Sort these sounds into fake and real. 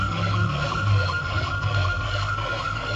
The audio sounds fake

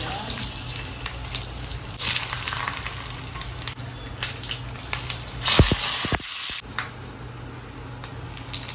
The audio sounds real